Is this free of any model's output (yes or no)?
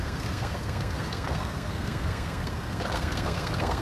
no